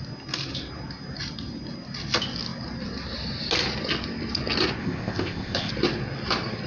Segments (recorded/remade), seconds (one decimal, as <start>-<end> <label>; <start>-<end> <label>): 0.0-4.8 recorded; 4.8-5.7 remade; 5.7-6.7 recorded